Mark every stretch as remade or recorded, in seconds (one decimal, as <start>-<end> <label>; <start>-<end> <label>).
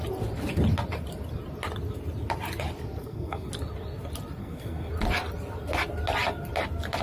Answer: 0.0-3.0 recorded; 3.0-3.5 remade; 3.5-4.4 recorded; 4.4-4.9 remade; 4.9-7.0 recorded